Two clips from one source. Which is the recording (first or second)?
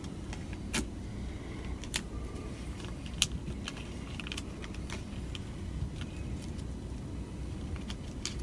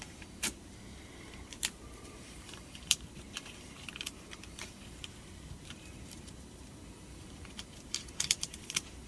first